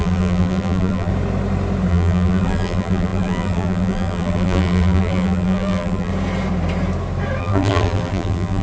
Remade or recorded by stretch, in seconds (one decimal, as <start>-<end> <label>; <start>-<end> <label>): 0.0-1.1 remade; 1.1-1.9 recorded; 1.9-6.1 remade; 6.1-7.4 recorded; 7.4-8.6 remade